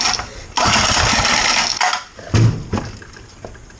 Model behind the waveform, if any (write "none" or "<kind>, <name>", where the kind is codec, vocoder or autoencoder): none